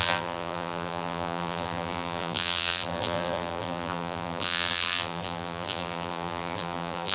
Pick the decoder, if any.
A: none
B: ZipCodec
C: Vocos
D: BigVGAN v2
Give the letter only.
D